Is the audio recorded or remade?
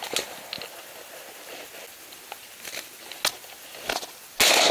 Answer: recorded